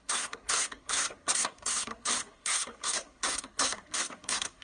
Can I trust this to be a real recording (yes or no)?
no